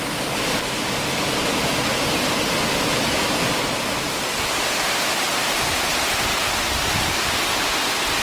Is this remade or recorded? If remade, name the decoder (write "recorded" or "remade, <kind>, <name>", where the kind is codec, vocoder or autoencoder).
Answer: recorded